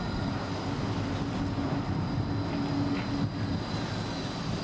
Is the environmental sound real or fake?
real